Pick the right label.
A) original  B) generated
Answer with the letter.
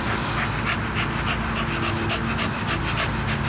A